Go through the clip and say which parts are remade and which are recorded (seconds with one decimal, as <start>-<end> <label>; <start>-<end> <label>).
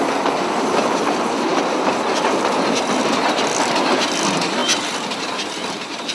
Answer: 0.0-6.1 recorded